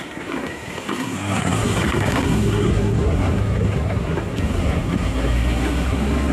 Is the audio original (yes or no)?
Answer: no